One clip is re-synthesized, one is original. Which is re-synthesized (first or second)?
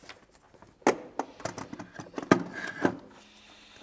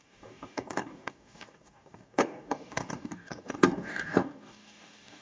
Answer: second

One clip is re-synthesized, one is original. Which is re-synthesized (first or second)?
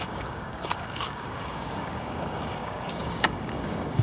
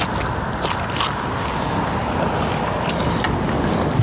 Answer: first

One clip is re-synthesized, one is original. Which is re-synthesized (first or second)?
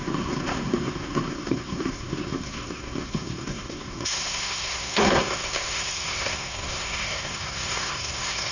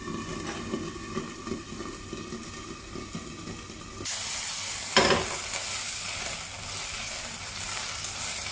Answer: first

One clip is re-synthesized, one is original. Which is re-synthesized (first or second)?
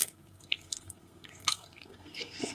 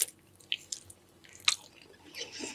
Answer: first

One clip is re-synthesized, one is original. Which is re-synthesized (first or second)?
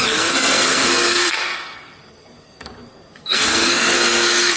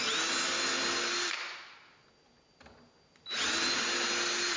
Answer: first